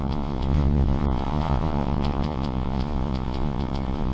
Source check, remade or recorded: remade